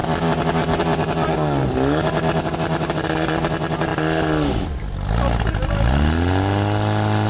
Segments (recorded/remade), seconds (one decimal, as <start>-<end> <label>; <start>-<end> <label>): 0.0-7.3 recorded